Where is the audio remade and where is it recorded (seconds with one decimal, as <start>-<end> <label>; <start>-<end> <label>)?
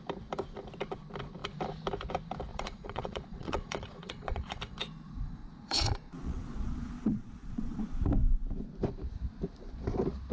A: 0.0-2.5 recorded; 2.5-4.6 remade; 4.6-5.4 recorded; 5.4-7.8 remade; 7.8-10.3 recorded